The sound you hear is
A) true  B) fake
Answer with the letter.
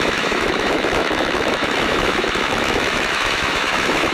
B